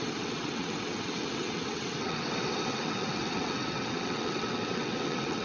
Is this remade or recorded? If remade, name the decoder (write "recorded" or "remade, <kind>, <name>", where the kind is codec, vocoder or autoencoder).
remade, vocoder, WaveNeXt